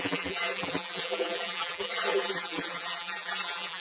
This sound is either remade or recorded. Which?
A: remade